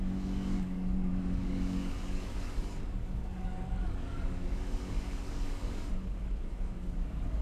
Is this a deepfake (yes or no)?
yes